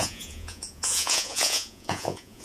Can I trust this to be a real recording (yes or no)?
no